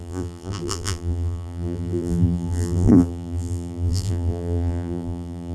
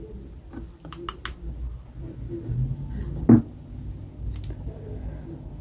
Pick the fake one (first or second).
first